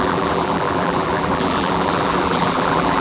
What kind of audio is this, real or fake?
fake